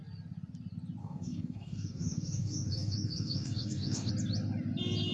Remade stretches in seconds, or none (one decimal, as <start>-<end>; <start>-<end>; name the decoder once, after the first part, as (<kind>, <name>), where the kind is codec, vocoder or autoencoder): 1.0-4.1 (codec, DAC)